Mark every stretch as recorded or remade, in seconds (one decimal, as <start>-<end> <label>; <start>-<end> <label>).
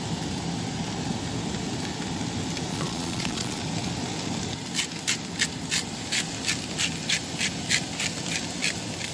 0.0-2.7 recorded; 2.7-3.6 remade; 3.6-9.1 recorded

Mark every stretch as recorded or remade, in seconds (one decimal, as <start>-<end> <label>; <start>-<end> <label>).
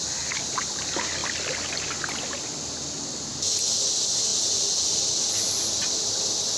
0.0-6.6 recorded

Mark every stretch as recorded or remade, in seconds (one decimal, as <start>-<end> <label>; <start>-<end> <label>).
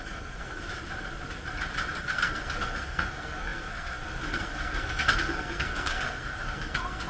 0.0-0.7 remade; 0.7-2.0 recorded; 2.0-7.1 remade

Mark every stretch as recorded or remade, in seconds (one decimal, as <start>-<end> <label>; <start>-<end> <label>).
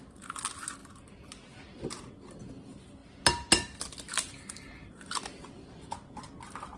0.0-6.8 recorded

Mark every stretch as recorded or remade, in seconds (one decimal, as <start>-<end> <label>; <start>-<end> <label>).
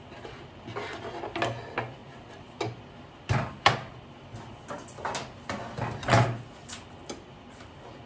0.0-8.1 recorded